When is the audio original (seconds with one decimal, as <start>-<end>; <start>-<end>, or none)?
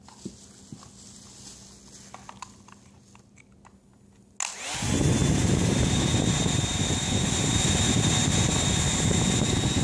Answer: 0.0-5.2; 8.1-9.8